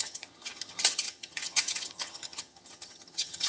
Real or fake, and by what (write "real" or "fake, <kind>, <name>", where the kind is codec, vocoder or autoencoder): fake, vocoder, HiFi-GAN